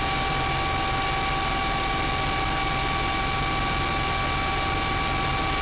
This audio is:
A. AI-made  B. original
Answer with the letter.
B